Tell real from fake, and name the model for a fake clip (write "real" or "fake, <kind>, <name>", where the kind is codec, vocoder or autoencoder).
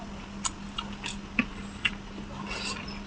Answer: real